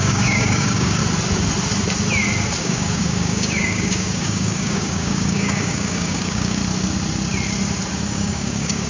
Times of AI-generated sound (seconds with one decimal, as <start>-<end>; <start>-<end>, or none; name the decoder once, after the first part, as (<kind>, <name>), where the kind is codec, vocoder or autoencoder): 0.0-1.0 (codec, DAC); 2.6-6.6; 8.0-8.9